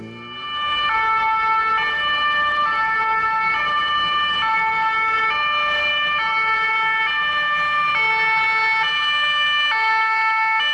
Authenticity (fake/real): real